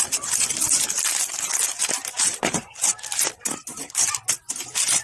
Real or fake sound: real